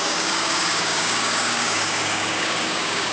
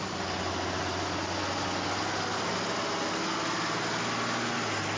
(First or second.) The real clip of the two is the second